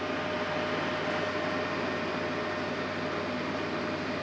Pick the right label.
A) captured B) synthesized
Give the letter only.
A